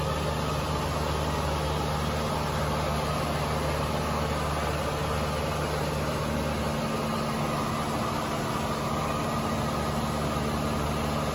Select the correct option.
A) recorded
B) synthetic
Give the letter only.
A